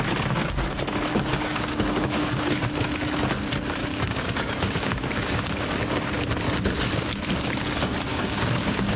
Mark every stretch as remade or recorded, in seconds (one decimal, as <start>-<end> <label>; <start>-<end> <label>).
0.0-1.1 recorded; 1.1-2.6 remade; 2.6-3.8 recorded; 3.8-5.7 remade; 5.7-8.1 recorded; 8.1-9.0 remade